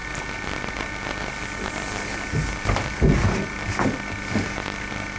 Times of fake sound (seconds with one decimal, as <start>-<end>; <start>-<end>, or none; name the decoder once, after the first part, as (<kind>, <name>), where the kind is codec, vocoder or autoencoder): none